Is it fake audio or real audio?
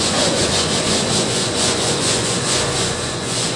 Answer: fake